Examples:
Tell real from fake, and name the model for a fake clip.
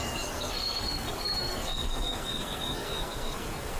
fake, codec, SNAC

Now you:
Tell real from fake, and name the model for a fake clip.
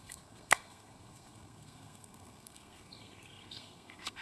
fake, codec, SNAC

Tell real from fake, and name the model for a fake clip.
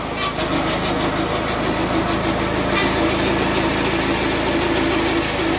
real